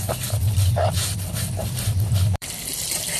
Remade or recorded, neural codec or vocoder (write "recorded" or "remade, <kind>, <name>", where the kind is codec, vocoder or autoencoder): remade, vocoder, BigVGAN v2